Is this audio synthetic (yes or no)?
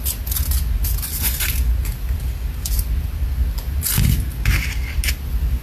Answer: no